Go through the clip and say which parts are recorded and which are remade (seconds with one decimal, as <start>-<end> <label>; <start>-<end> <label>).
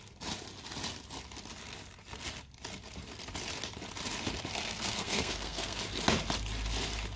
0.0-4.5 recorded; 4.5-5.8 remade; 5.8-7.2 recorded